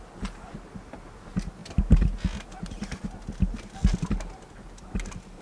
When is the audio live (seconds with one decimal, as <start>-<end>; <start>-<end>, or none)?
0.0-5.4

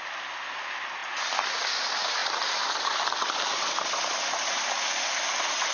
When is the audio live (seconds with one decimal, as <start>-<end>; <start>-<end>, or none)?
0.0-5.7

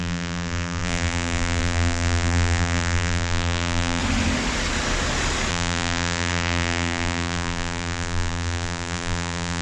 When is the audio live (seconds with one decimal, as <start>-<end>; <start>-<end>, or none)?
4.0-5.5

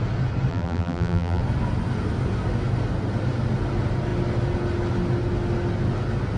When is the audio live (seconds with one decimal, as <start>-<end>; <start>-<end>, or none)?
0.0-0.5; 1.4-6.4

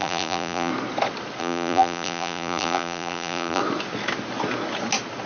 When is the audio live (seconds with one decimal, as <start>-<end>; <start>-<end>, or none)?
0.7-1.4; 3.6-5.3

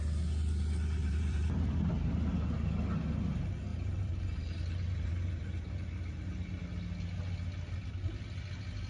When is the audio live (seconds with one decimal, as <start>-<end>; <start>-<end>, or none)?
0.0-1.0; 1.9-3.7; 6.6-8.9

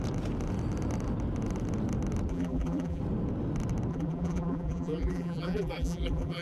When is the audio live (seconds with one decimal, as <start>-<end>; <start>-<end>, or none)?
0.0-2.3; 3.0-3.9

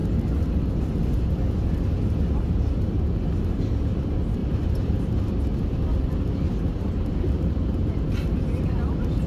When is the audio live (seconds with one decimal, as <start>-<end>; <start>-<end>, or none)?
0.0-4.4; 5.2-9.3